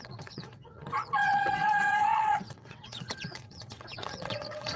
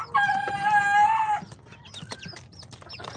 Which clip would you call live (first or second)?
second